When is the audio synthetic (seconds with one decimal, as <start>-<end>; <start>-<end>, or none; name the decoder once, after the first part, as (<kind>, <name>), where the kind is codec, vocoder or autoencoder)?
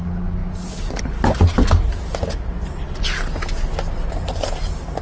none